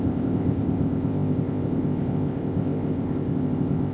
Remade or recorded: remade